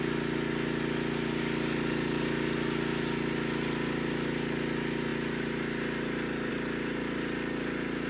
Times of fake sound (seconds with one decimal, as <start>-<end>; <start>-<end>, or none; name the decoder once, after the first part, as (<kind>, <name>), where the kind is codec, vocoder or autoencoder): none